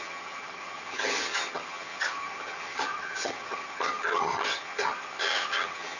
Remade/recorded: remade